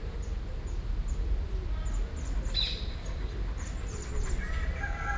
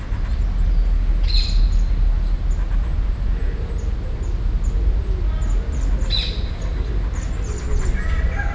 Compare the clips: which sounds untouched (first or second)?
second